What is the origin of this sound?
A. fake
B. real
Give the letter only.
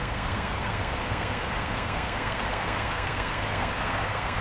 A